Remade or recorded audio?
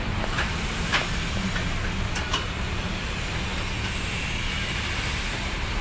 recorded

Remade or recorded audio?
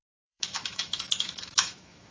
remade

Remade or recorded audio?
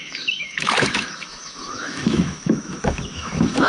remade